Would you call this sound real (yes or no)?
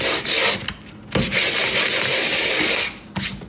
yes